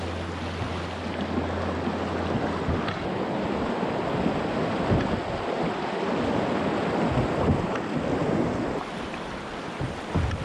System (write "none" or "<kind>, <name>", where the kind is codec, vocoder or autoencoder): none